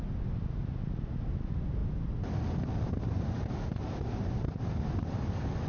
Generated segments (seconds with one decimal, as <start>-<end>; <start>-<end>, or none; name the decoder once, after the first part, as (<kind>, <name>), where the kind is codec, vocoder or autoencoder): none